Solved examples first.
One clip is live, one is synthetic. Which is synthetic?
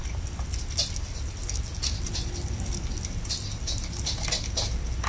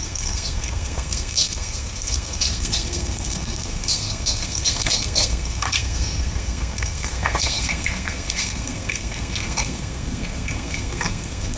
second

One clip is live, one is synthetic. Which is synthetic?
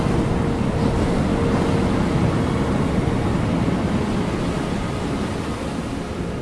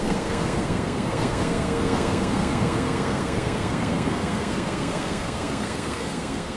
second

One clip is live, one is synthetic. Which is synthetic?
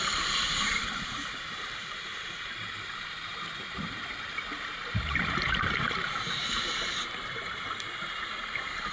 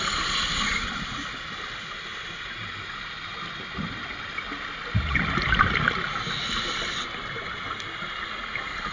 first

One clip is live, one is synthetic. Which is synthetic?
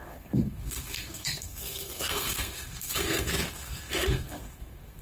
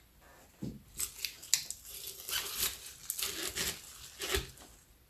first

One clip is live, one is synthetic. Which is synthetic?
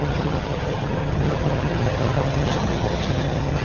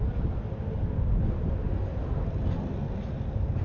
first